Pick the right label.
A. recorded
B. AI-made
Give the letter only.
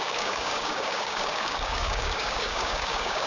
B